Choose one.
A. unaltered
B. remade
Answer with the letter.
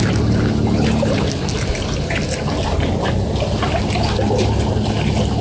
A